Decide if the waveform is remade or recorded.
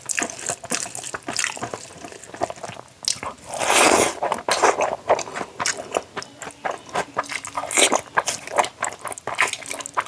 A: recorded